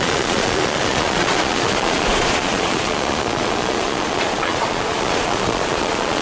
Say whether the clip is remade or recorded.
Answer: remade